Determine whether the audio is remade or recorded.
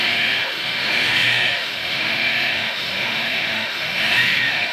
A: remade